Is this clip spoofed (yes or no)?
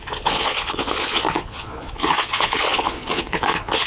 yes